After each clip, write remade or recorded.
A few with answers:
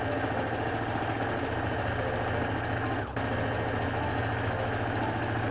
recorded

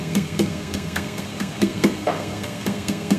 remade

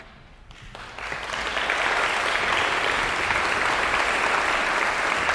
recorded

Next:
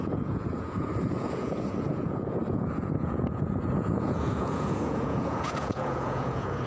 remade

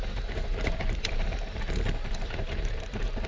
remade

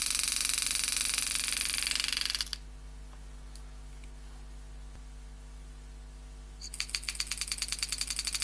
recorded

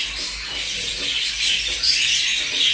recorded